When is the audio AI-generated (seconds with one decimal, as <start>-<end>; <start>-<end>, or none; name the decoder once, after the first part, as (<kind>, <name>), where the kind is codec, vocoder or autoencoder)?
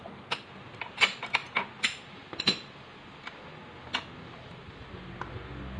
none